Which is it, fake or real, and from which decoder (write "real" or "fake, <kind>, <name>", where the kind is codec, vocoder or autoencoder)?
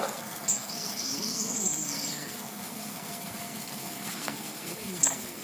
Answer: fake, codec, SNAC